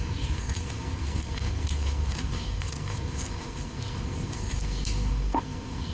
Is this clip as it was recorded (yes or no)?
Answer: no